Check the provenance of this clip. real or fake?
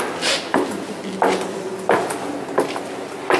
real